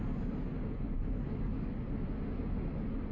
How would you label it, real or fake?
real